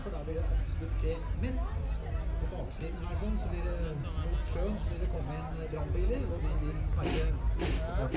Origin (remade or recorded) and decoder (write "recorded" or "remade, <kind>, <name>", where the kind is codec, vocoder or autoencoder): recorded